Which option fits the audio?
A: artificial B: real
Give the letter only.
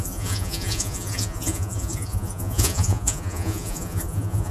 A